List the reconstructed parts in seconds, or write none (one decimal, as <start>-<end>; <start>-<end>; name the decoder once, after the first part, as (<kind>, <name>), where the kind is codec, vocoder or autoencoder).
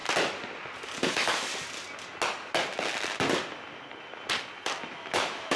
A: 1.1-1.5 (autoencoder, DAC-VAE); 4.9-5.6